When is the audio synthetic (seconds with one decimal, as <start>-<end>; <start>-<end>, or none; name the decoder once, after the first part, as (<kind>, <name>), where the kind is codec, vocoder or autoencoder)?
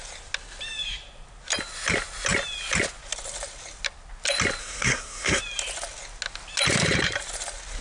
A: 4.6-5.4 (codec, SNAC)